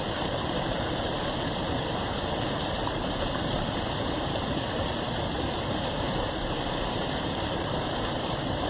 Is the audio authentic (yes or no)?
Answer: no